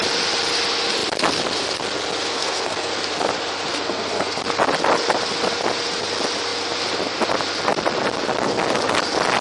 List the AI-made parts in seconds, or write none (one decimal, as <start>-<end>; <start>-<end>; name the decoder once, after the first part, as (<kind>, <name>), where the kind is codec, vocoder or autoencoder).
2.3-2.9 (codec, SNAC); 3.7-4.4